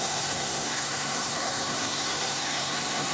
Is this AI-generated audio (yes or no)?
yes